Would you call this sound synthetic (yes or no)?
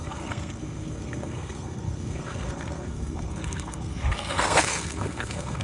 yes